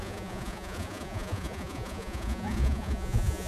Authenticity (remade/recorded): remade